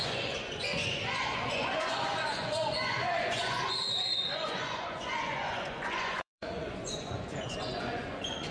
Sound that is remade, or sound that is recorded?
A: remade